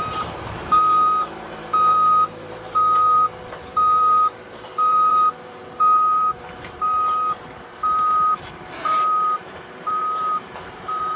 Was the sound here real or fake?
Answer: fake